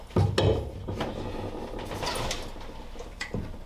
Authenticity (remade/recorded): recorded